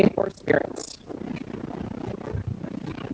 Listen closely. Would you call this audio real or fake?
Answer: real